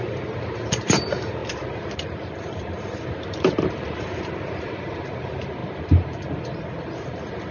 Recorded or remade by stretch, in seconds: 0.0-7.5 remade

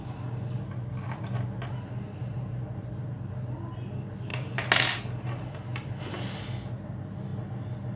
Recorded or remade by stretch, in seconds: 0.0-8.0 recorded

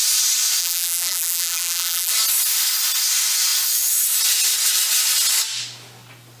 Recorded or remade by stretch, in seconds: 0.0-0.6 recorded; 0.6-2.1 remade; 2.1-6.4 recorded

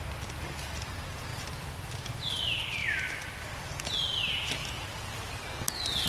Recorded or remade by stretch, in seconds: 0.0-1.3 recorded; 1.3-2.3 remade; 2.3-2.8 recorded; 2.8-3.6 remade; 3.6-6.1 recorded

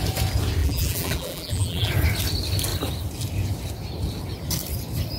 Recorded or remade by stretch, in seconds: 0.0-0.6 recorded; 0.6-1.9 remade; 1.9-5.2 recorded

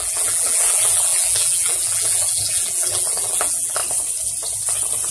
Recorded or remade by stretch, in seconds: 0.0-3.8 remade; 3.8-5.1 recorded

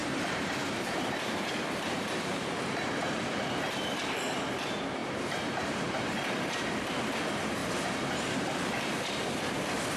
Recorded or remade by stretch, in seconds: 0.0-3.6 remade; 3.6-5.0 recorded; 5.0-6.0 remade; 6.0-7.6 recorded; 7.6-8.9 remade; 8.9-10.0 recorded

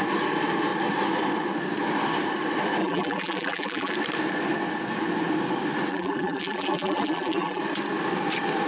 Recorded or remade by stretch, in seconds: 0.0-2.8 recorded; 2.8-3.9 remade; 3.9-5.9 recorded; 5.9-7.6 remade; 7.6-8.7 recorded